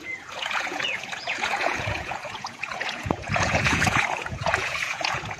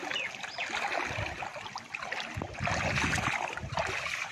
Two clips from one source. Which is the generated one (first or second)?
first